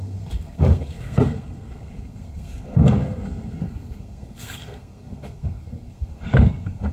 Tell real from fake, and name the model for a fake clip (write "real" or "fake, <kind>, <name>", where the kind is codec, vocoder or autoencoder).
fake, codec, SNAC